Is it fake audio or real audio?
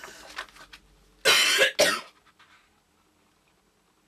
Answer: real